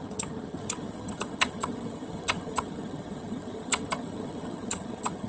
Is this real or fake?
fake